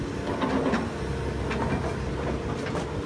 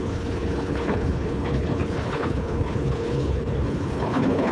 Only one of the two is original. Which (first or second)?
first